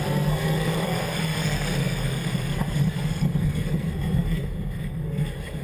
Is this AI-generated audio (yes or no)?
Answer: yes